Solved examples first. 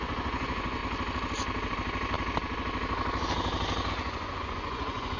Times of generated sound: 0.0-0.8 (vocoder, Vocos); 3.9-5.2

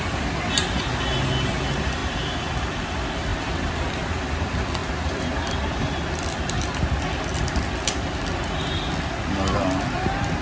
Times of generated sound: none

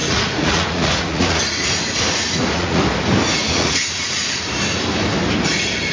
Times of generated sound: 0.0-2.8 (vocoder, Vocos); 3.4-4.5

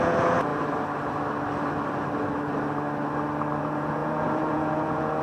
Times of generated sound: 0.0-0.5 (vocoder, Vocos); 3.6-5.2

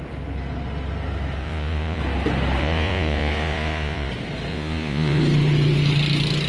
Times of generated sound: 1.4-2.0 (vocoder, Vocos); 2.6-4.1; 4.5-5.2

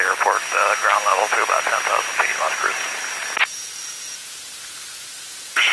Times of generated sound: 2.3-3.1 (vocoder, Vocos); 3.6-5.7

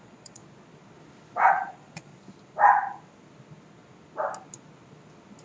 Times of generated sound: 0.0-0.4 (vocoder, Vocos); 1.5-2.1

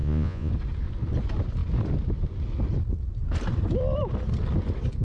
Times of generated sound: 0.0-0.5 (vocoder, Vocos)